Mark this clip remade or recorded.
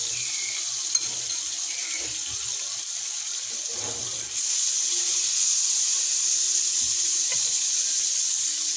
recorded